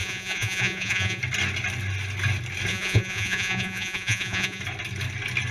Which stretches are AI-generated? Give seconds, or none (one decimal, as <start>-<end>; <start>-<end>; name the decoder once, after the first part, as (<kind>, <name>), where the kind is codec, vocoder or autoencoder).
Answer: 0.0-1.2 (vocoder, Vocos); 2.7-4.6